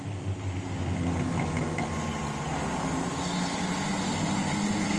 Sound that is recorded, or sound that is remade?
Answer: recorded